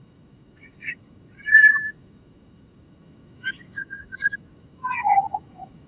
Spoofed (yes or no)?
yes